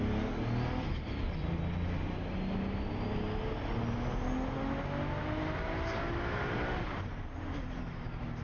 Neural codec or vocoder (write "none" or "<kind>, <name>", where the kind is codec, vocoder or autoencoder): none